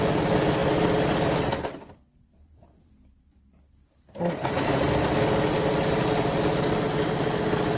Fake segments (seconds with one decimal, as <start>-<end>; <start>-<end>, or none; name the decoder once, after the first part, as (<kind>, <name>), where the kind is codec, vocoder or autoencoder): none